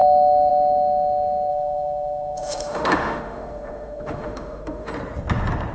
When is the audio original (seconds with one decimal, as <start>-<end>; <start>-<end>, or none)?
0.0-1.5; 4.9-5.7